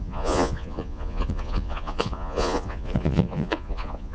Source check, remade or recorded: remade